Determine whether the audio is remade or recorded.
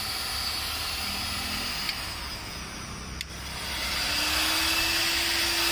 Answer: recorded